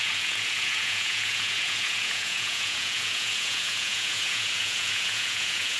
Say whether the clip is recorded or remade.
remade